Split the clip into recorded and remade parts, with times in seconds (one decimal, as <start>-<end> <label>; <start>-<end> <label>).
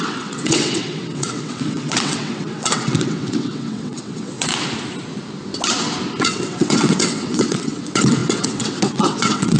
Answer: 0.0-4.5 remade; 4.5-6.2 recorded; 6.2-9.6 remade